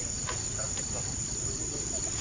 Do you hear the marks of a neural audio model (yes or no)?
no